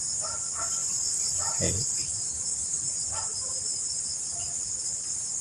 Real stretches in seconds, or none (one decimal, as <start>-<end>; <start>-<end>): 0.0-0.8; 4.0-5.4